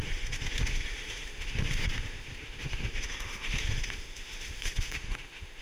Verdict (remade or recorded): remade